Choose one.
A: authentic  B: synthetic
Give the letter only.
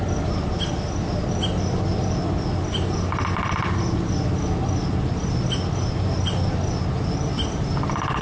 A